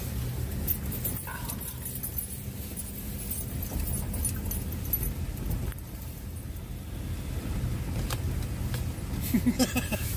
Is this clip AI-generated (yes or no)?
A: no